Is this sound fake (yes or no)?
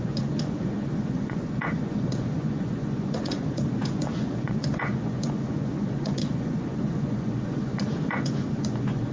yes